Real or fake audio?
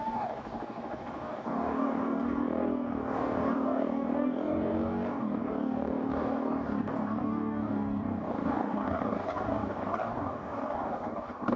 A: fake